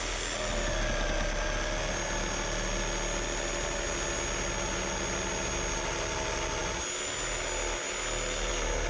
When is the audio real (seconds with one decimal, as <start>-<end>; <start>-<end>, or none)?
0.0-8.9